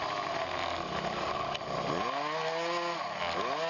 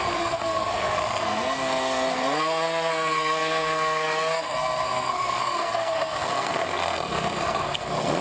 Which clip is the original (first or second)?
first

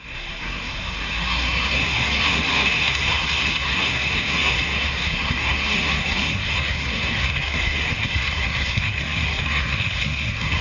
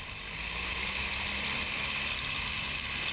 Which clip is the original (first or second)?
second